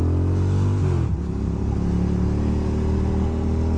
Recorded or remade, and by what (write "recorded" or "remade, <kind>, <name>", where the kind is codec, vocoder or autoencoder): recorded